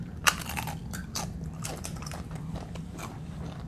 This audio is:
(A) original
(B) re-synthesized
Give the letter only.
B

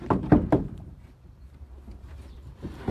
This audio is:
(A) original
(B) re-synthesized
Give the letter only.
B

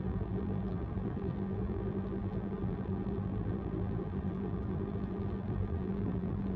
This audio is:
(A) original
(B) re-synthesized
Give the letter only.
B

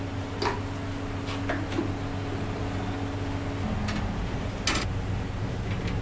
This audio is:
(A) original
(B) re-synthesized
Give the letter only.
A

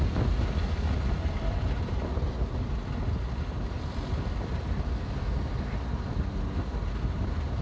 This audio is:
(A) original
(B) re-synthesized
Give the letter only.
A